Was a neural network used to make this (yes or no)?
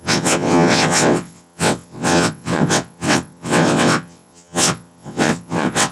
yes